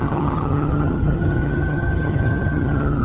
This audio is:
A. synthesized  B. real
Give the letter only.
A